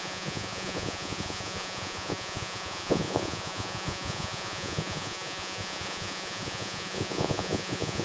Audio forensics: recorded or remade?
remade